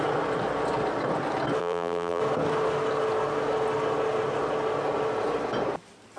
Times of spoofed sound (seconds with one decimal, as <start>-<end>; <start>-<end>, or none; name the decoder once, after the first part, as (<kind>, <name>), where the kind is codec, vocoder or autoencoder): 1.6-2.2 (vocoder, BigVGAN v2)